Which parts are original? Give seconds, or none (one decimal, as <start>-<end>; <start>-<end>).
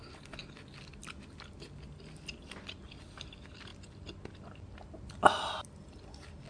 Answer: 0.0-6.5